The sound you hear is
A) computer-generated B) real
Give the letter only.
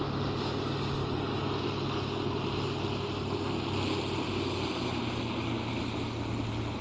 B